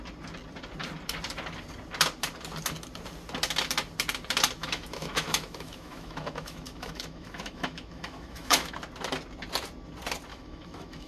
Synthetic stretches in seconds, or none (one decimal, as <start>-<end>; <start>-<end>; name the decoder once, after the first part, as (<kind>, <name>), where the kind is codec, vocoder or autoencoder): 4.6-8.7 (autoencoder, DAC-VAE); 10.3-11.1